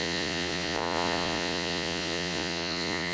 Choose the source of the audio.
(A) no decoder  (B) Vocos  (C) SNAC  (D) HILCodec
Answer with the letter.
B